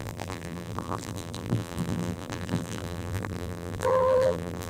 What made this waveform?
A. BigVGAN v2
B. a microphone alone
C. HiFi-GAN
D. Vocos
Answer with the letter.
A